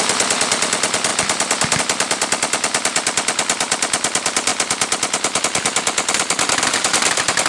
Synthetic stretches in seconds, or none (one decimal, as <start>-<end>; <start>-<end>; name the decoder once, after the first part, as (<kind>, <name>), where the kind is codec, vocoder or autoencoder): none